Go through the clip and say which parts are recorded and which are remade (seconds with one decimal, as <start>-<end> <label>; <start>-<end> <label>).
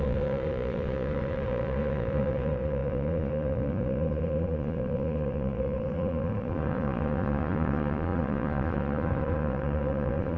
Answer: 0.0-10.4 remade